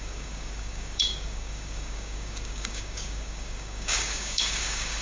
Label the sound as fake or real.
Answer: fake